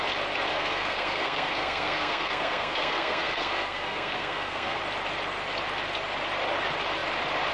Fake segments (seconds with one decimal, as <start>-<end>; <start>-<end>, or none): 0.5-4.8